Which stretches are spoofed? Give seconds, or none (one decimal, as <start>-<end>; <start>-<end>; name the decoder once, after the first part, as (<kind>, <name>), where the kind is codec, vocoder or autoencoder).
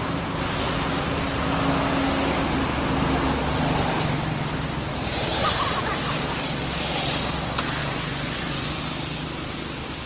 7.8-8.8 (vocoder, Vocos)